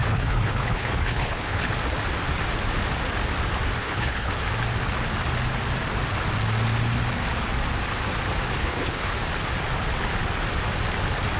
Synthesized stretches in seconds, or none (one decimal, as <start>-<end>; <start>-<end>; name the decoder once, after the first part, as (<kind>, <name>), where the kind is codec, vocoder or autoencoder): 0.0-1.7 (codec, HILCodec); 3.8-4.3; 8.6-9.1